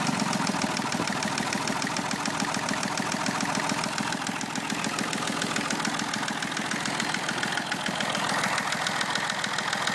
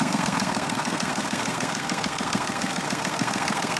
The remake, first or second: second